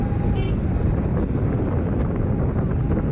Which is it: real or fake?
real